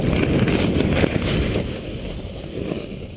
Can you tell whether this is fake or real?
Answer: real